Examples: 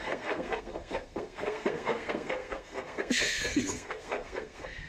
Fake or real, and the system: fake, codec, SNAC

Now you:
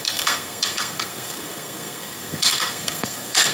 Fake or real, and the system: fake, codec, SNAC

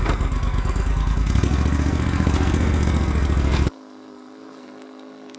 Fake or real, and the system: fake, codec, SNAC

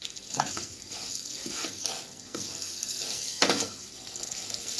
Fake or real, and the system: fake, codec, SNAC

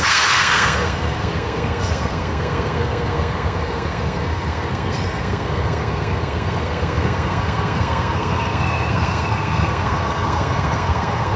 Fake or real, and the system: fake, codec, SNAC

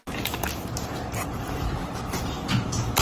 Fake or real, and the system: real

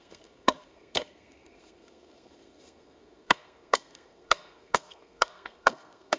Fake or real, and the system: fake, codec, SNAC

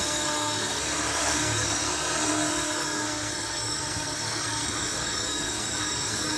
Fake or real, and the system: fake, codec, SNAC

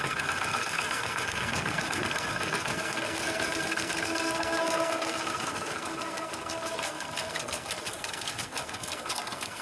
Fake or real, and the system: fake, codec, SNAC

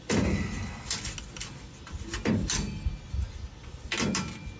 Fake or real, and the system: real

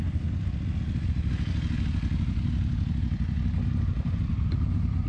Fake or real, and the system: real